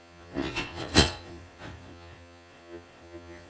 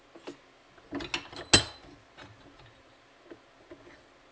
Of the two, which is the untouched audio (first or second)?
second